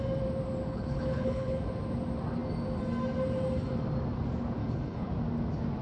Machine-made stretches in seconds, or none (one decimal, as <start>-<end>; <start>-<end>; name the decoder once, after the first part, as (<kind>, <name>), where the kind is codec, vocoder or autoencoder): 0.7-1.6 (codec, HILCodec); 4.6-5.1

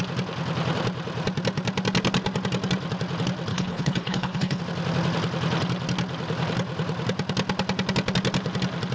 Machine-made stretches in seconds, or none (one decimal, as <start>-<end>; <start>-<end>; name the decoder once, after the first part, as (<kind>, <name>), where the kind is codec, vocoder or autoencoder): 3.5-4.6 (codec, HILCodec)

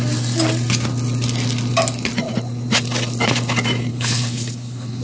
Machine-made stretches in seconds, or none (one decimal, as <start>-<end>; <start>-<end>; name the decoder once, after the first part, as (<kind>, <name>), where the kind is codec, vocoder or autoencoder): 3.9-5.0 (codec, HILCodec)

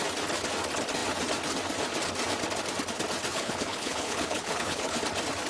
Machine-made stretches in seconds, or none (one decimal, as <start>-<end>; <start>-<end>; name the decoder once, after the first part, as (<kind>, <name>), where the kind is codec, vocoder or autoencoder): 3.3-5.0 (codec, HILCodec)

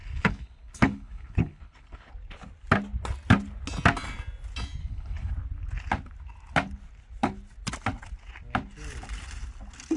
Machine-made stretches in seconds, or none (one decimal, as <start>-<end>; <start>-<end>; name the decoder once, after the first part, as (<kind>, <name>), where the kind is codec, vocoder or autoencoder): 0.0-2.1 (codec, HILCodec); 4.8-5.3

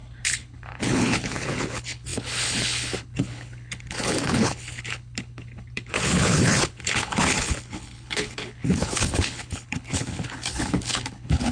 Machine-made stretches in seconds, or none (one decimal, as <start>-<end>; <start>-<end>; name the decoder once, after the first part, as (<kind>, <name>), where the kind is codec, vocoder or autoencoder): 0.0-11.5 (codec, HILCodec)

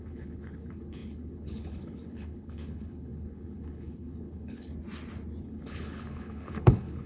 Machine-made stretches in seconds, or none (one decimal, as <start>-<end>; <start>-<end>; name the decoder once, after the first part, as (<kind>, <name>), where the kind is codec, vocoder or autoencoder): 0.0-4.7 (codec, HILCodec); 5.4-7.1